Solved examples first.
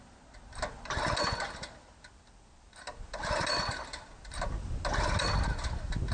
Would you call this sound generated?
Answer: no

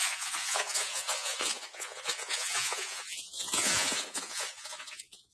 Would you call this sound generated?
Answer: yes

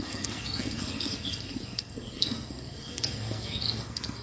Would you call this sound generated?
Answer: yes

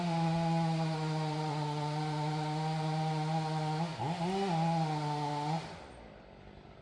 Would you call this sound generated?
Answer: no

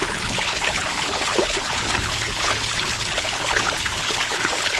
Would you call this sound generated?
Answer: yes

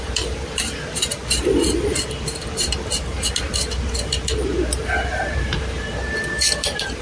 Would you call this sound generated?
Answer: yes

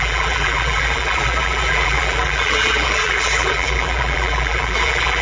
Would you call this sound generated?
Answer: yes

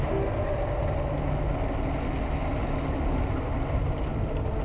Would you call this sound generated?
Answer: no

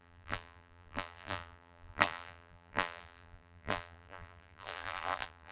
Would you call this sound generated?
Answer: yes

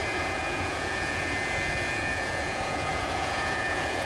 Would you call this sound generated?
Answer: yes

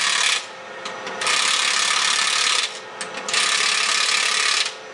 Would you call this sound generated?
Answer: no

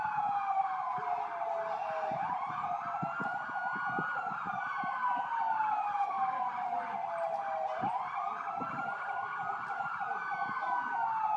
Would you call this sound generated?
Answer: no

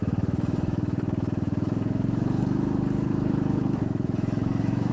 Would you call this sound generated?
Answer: yes